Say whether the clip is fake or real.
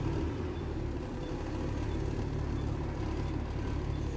real